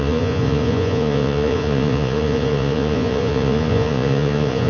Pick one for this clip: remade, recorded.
remade